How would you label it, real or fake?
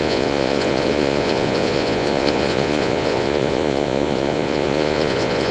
fake